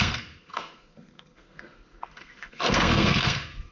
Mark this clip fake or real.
fake